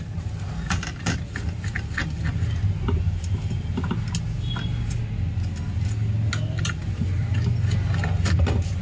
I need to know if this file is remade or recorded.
recorded